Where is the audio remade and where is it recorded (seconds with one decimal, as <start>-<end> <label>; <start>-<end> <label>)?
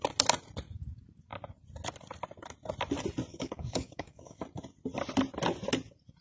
0.0-3.3 recorded; 3.3-4.4 remade; 4.4-6.2 recorded